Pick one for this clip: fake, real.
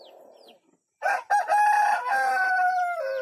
real